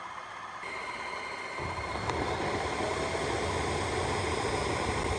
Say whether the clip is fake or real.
real